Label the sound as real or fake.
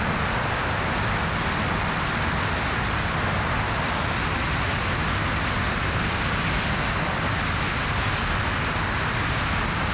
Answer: real